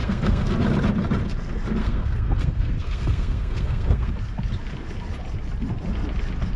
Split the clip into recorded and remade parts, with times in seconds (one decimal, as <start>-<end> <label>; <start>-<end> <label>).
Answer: 0.0-0.6 remade; 0.6-1.8 recorded; 1.8-4.1 remade; 4.1-6.6 recorded